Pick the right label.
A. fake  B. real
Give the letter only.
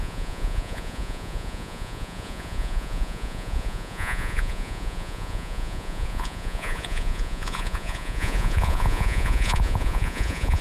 A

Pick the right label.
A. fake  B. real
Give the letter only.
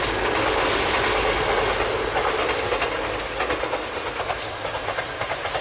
B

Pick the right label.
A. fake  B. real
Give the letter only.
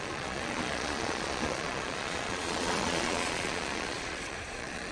A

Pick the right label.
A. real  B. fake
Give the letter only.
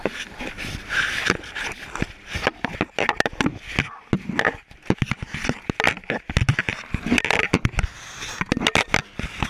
A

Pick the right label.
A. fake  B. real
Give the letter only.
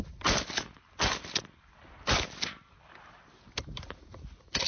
B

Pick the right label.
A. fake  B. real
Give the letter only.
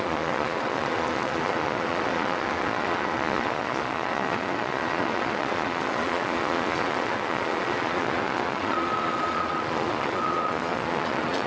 A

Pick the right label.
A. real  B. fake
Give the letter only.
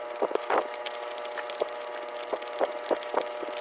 A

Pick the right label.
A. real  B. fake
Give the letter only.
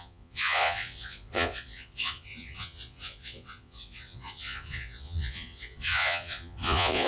B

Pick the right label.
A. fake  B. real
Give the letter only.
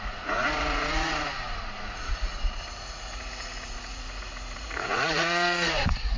A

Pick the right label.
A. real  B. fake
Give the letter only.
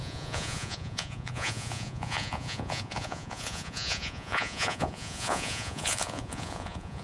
B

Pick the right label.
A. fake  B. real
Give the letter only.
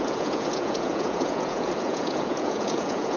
A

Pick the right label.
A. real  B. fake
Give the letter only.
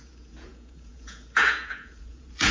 B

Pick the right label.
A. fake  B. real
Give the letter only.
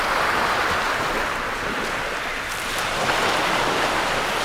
B